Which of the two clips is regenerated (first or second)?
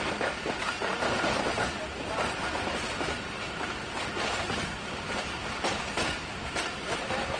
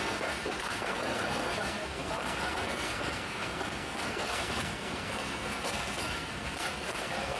second